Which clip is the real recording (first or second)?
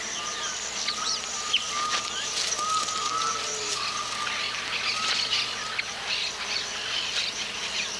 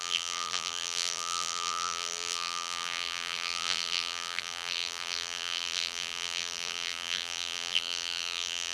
first